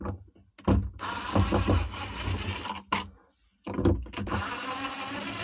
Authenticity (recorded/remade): recorded